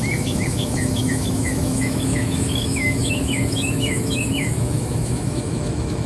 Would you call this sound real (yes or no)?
no